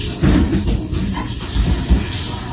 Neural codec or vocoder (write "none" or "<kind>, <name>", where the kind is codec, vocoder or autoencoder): none